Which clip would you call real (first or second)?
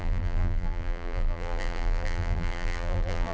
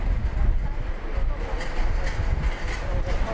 second